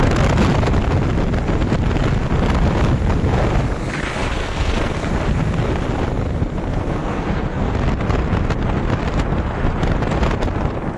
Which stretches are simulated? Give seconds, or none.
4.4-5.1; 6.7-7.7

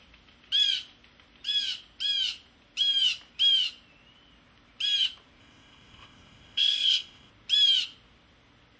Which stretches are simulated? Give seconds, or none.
5.4-7.3

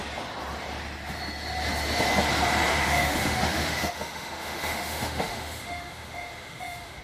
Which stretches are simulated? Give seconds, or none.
2.7-7.0

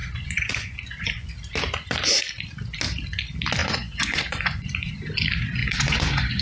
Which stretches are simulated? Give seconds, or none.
0.0-1.3; 3.6-4.9; 5.6-6.4

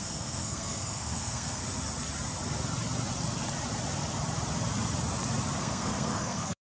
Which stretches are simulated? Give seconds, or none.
0.0-1.6; 5.6-6.6

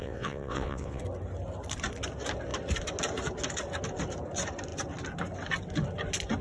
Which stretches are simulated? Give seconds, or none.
0.0-1.0

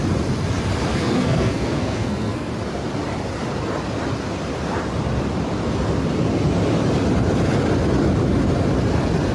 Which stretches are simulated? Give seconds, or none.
0.9-2.5

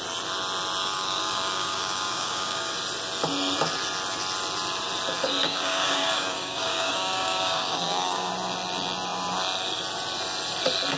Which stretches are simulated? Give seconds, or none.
0.8-2.7; 5.4-8.3